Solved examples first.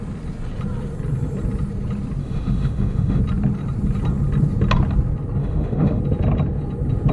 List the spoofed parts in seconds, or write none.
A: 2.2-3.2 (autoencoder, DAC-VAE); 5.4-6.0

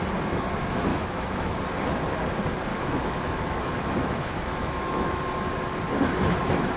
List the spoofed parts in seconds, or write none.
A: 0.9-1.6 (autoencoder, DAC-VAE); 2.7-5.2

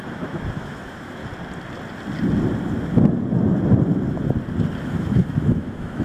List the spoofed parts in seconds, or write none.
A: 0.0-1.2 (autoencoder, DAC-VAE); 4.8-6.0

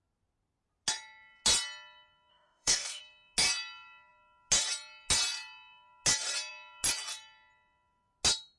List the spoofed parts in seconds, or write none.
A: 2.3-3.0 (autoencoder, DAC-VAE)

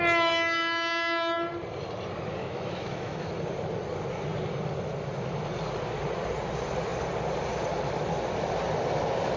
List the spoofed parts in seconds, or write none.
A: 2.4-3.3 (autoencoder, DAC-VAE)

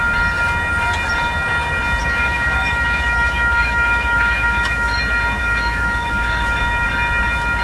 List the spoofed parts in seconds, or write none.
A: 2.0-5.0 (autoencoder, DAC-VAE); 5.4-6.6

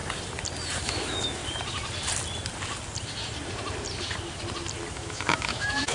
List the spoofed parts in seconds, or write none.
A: 0.8-1.4 (autoencoder, DAC-VAE); 4.9-5.9